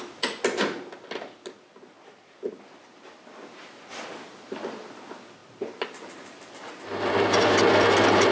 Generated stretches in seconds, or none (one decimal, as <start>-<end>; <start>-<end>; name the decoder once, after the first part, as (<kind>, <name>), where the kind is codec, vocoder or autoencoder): 5.4-6.7 (vocoder, BigVGAN v2)